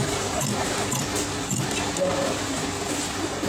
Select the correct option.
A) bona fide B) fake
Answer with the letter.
A